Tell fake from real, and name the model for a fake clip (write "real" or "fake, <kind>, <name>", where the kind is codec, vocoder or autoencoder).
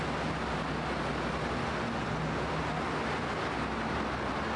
real